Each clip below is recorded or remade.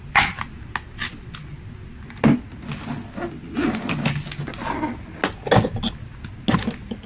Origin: recorded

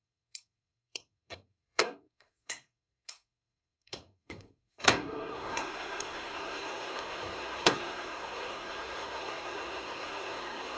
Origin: remade